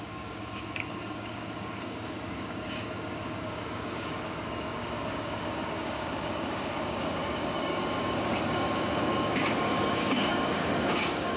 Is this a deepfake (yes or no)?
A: yes